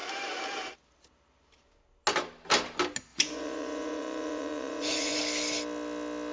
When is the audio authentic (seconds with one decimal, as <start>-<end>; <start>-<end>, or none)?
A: 0.0-3.1; 5.2-6.3

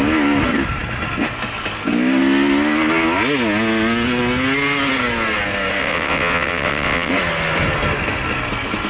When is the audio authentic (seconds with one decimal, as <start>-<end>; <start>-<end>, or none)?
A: 0.0-5.8; 7.1-8.9

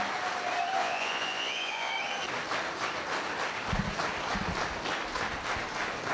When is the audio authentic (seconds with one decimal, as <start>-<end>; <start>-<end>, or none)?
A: 0.0-0.8; 1.9-6.1

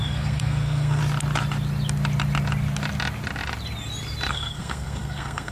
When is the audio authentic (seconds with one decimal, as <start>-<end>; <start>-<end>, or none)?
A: 1.0-4.3

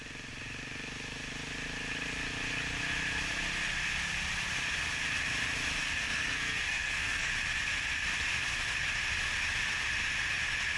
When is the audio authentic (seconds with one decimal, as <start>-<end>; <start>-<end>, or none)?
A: 0.0-5.8; 7.3-10.8

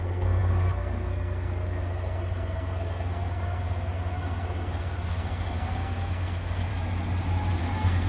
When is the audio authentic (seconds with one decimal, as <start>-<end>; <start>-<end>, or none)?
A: 6.7-7.6

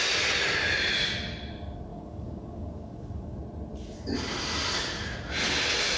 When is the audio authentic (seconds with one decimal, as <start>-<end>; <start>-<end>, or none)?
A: 0.0-1.9; 3.4-6.0

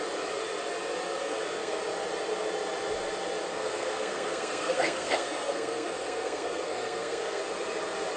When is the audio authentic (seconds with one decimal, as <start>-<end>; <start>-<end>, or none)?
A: 0.0-1.2; 1.8-3.5; 7.4-8.2